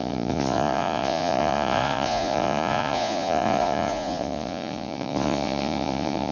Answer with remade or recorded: remade